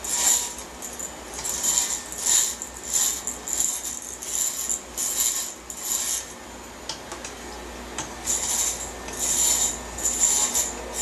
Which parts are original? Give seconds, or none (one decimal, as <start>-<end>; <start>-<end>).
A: 0.0-11.0